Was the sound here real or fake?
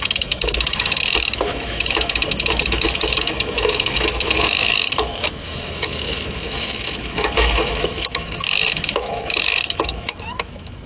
fake